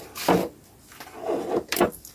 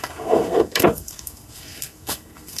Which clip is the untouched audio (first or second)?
first